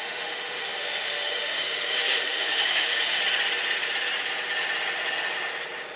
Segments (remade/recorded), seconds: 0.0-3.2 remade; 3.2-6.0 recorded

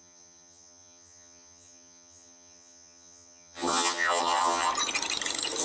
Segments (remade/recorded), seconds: 0.0-4.7 remade; 4.7-5.6 recorded

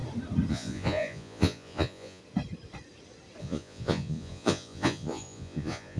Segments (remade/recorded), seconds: 0.0-0.5 recorded; 0.5-2.2 remade; 2.2-3.4 recorded; 3.4-6.0 remade